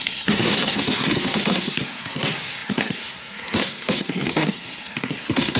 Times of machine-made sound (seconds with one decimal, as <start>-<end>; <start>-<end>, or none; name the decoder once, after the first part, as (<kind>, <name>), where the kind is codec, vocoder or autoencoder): 0.0-5.6 (codec, SNAC)